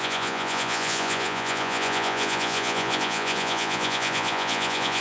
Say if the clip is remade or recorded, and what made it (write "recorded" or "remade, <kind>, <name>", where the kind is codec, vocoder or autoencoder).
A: remade, vocoder, Vocos